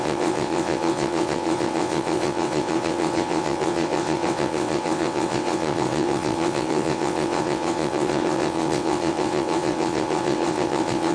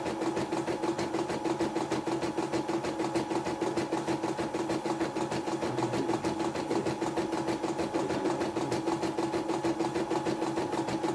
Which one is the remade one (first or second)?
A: first